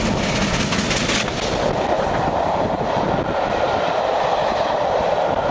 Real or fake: real